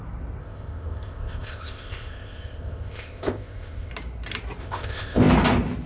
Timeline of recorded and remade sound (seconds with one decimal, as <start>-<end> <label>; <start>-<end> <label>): 0.0-0.4 recorded; 0.4-3.9 remade; 3.9-4.6 recorded; 4.6-5.3 remade; 5.3-5.9 recorded